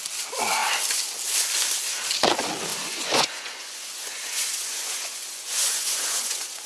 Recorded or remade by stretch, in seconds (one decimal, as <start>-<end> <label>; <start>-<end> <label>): 0.0-2.7 recorded; 2.7-6.7 remade